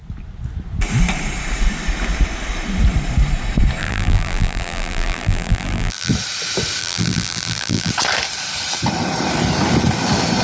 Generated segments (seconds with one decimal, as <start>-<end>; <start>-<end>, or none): 3.8-6.1; 6.8-7.9